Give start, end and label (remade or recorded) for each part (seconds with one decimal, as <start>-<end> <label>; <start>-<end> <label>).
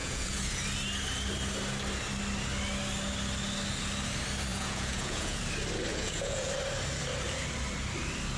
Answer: 0.0-0.6 remade; 0.6-4.5 recorded; 4.5-5.4 remade; 5.4-5.9 recorded; 5.9-6.5 remade; 6.5-8.4 recorded